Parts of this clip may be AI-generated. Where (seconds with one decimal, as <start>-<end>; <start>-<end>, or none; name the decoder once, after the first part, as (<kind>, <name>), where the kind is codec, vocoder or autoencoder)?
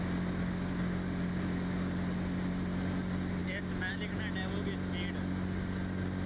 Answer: none